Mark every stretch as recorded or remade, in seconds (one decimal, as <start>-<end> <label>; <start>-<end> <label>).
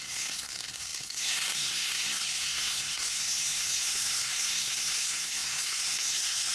0.0-6.5 remade